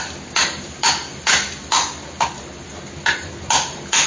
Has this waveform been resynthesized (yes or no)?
no